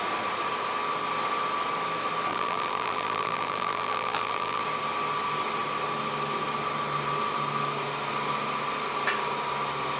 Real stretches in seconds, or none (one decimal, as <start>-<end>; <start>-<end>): 0.0-2.3; 4.6-10.0